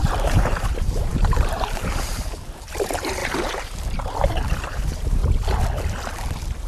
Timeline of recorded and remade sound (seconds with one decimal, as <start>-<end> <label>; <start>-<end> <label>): 0.0-5.2 remade; 5.2-6.7 recorded